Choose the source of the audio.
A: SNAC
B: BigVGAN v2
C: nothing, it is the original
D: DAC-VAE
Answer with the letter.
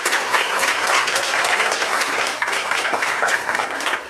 A